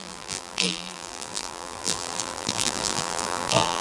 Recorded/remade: remade